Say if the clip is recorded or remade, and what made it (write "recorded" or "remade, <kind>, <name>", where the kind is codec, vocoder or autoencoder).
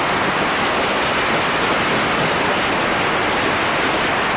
recorded